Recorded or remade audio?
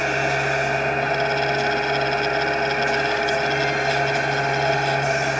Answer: recorded